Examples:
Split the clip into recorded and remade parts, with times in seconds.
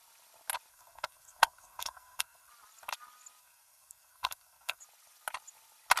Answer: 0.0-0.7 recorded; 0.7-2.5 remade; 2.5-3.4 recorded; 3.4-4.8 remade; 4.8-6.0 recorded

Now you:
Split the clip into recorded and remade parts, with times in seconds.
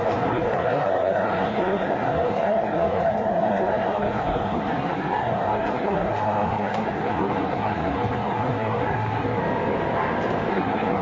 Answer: 0.0-9.4 remade; 9.4-10.5 recorded; 10.5-11.0 remade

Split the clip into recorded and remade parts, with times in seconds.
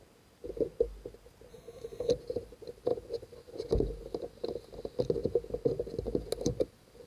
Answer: 0.0-1.5 recorded; 1.5-2.1 remade; 2.1-7.1 recorded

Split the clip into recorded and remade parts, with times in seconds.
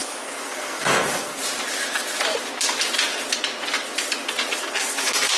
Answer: 0.0-1.4 remade; 1.4-4.6 recorded; 4.6-5.4 remade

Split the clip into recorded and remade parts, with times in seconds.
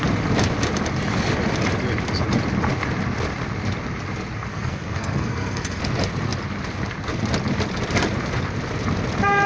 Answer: 0.0-4.5 recorded; 4.5-5.8 remade; 5.8-9.5 recorded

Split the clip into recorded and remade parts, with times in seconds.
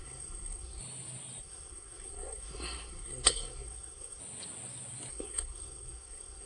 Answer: 0.0-0.8 remade; 0.8-1.4 recorded; 1.4-4.2 remade; 4.2-5.1 recorded; 5.1-6.5 remade